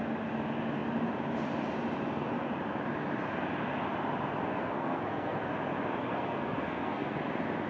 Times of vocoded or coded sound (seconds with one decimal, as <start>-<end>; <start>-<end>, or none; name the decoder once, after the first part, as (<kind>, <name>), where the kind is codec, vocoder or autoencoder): 4.5-5.5 (codec, SNAC); 6.0-7.2